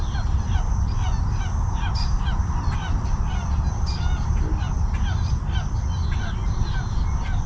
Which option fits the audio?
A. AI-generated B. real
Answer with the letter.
B